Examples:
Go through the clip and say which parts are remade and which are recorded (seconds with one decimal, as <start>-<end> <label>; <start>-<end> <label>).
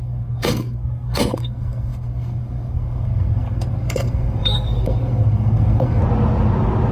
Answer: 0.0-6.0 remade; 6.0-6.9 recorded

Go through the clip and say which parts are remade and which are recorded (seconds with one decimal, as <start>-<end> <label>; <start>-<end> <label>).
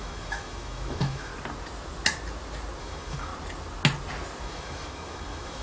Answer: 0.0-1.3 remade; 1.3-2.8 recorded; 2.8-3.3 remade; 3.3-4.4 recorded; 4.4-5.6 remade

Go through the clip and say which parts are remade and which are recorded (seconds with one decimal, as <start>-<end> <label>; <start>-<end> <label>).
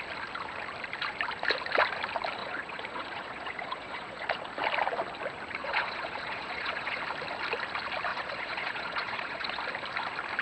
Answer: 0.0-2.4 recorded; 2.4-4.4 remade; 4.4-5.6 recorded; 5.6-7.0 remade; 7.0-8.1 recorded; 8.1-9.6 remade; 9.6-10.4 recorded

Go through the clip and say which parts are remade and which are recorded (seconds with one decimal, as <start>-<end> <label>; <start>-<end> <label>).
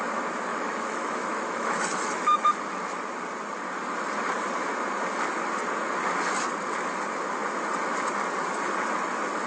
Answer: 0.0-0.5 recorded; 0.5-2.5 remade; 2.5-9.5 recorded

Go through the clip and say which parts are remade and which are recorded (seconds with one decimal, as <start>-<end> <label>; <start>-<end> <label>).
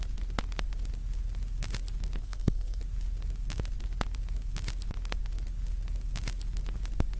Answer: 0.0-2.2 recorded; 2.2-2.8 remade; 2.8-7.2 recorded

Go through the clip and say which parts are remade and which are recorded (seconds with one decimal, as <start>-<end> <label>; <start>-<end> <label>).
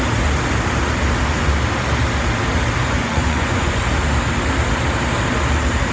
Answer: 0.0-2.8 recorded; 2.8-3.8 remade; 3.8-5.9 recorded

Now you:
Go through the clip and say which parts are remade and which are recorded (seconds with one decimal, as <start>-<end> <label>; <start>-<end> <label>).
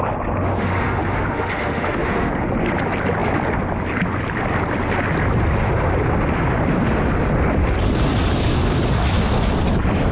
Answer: 0.0-0.4 recorded; 0.4-2.3 remade; 2.3-10.1 recorded